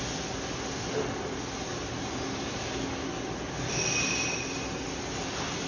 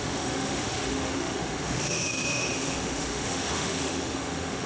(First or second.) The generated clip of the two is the second